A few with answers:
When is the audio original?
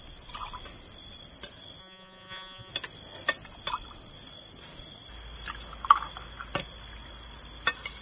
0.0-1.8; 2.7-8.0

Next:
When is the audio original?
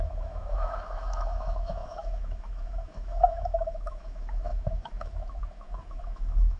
none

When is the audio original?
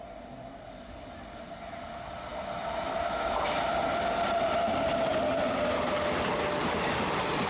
0.0-7.5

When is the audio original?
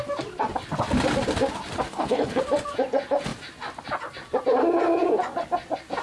0.0-1.9; 2.4-6.0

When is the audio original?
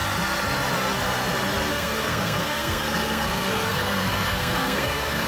0.0-1.7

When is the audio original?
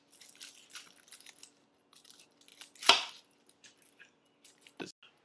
0.0-5.2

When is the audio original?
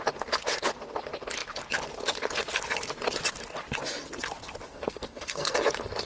0.0-4.7; 5.6-6.1